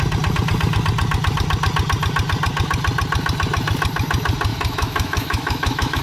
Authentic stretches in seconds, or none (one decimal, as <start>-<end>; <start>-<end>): 0.0-4.5